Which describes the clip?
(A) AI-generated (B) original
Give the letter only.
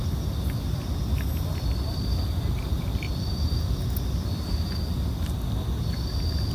B